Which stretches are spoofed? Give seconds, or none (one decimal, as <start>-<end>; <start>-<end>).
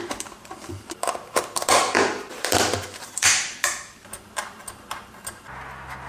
2.0-4.0